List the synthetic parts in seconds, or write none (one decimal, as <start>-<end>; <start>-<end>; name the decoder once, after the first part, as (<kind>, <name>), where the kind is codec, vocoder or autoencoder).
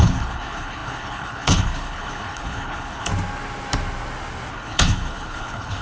0.0-3.1 (codec, HILCodec); 4.5-5.8